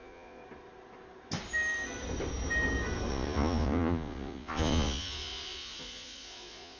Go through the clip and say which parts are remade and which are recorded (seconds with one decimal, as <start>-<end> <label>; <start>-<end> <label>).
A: 0.0-0.4 remade; 0.4-3.1 recorded; 3.1-6.8 remade

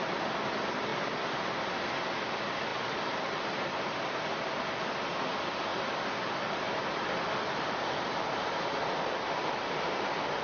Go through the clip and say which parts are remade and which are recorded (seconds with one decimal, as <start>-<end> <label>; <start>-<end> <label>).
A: 0.0-0.9 recorded; 0.9-1.7 remade; 1.7-2.7 recorded; 2.7-3.4 remade; 3.4-10.4 recorded